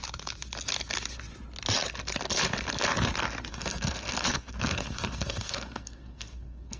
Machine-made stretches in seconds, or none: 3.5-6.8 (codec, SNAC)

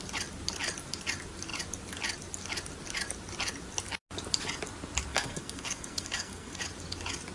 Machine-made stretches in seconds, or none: 5.1-6.6 (codec, SNAC)

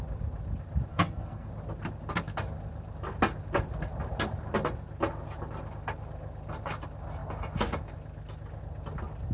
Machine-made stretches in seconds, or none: 0.9-1.5 (codec, SNAC)

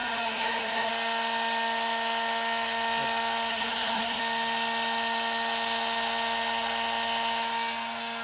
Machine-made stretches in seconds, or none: 0.0-0.9 (codec, SNAC); 3.5-4.2

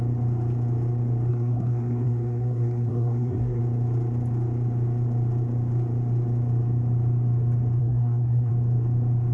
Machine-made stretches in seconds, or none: 1.3-3.6 (codec, SNAC); 7.8-8.5

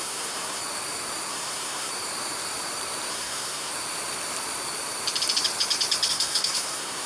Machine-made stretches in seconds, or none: 0.0-0.6 (codec, SNAC); 1.3-1.9; 3.1-3.7; 6.1-7.1

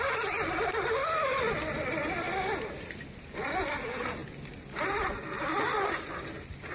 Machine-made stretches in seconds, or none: none

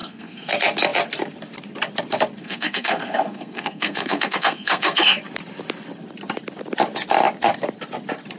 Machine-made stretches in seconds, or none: 0.0-0.5 (codec, SNAC); 2.4-5.2